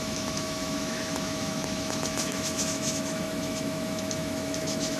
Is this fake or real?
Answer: fake